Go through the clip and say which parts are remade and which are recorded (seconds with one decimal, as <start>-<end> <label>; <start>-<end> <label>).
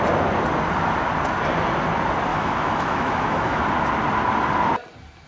0.0-2.3 recorded; 2.3-3.6 remade; 3.6-5.3 recorded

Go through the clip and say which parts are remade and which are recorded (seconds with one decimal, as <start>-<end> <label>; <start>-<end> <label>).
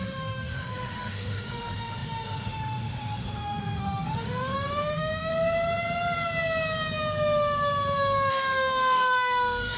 0.0-5.3 remade; 5.3-8.3 recorded; 8.3-9.8 remade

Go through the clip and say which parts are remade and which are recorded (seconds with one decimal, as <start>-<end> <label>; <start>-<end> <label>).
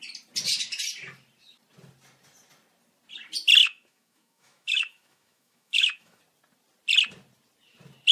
0.0-3.6 recorded; 3.6-6.2 remade; 6.2-8.1 recorded